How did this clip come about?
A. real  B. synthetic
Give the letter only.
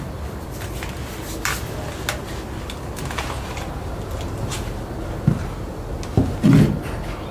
A